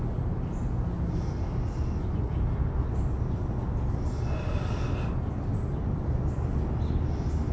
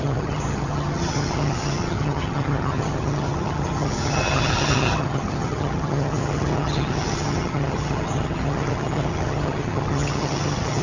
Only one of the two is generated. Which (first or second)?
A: second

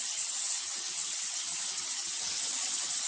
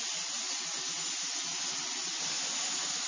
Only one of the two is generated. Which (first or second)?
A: first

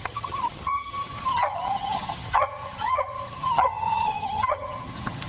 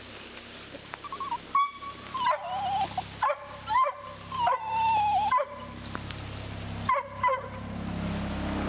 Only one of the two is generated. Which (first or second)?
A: first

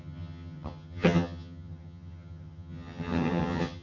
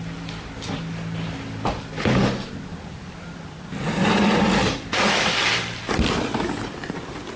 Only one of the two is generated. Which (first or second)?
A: first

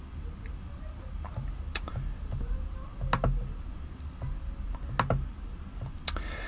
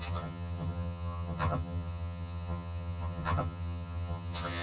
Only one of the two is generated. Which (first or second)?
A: second